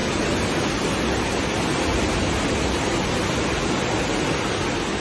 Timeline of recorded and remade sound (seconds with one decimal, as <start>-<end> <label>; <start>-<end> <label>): 0.0-5.0 recorded